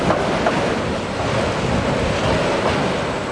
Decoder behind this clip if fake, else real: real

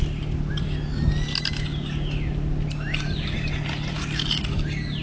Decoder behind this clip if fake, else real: real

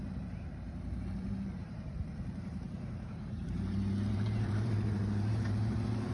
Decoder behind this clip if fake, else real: fake, vocoder, BigVGAN v2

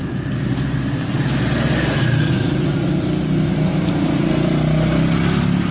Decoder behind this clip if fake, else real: real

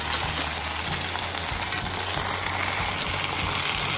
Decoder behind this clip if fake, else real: real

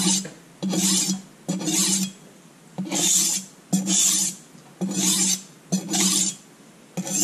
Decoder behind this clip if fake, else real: real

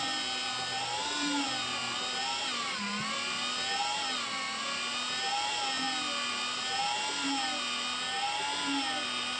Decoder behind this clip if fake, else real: real